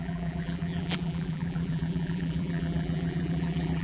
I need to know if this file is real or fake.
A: fake